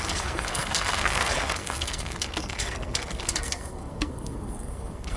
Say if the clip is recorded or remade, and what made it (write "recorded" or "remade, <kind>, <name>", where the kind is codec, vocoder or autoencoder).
remade, codec, SNAC